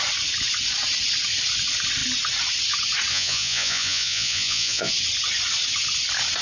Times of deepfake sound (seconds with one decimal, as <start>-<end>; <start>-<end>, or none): 3.1-4.9